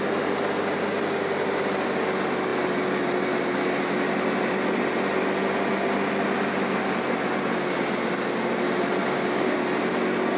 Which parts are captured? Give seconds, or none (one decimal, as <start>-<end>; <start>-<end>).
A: 0.0-9.0; 9.6-10.4